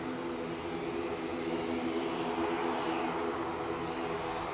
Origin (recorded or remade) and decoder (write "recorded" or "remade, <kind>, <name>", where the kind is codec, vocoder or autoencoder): recorded